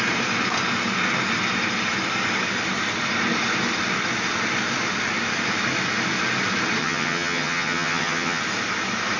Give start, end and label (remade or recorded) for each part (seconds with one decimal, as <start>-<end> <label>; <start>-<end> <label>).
0.0-6.8 recorded; 6.8-8.4 remade; 8.4-9.2 recorded